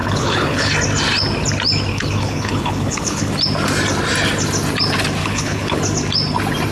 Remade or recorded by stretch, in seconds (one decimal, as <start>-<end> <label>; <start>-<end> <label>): 0.0-0.7 remade; 0.7-1.9 recorded; 1.9-3.3 remade; 3.3-5.2 recorded; 5.2-5.8 remade; 5.8-6.7 recorded